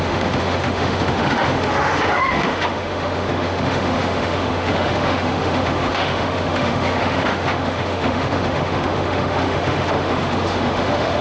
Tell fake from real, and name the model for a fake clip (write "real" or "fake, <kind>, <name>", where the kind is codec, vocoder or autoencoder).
fake, autoencoder, DAC-VAE